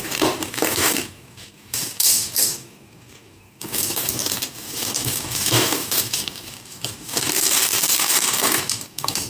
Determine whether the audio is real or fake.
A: fake